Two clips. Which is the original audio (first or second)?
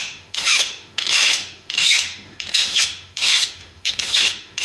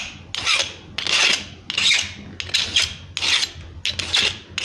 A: second